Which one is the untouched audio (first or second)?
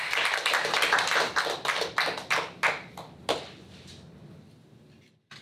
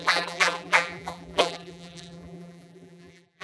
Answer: first